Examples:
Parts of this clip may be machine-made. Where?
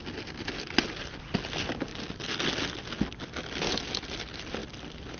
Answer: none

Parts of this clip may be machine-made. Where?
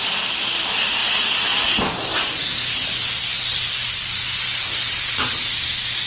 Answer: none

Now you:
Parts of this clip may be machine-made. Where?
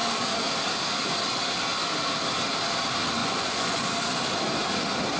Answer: 3.2-3.8 (vocoder, Vocos)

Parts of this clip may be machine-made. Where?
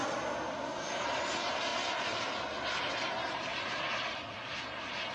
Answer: 0.9-1.7 (vocoder, BigVGAN v2); 2.8-3.5; 4.3-5.1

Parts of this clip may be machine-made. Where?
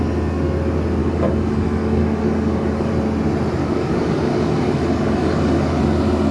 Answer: 1.0-2.9 (codec, DAC); 3.6-5.8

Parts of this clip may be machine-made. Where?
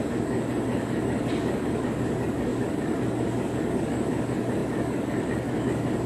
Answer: 0.0-6.1 (codec, DAC)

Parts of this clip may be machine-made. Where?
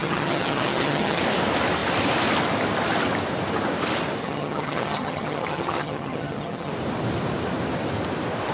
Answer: 0.0-1.2 (vocoder, HiFi-GAN); 4.2-6.7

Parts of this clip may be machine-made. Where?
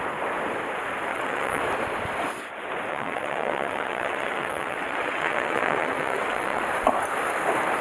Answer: 1.1-1.6 (vocoder, WaveNeXt); 2.9-6.6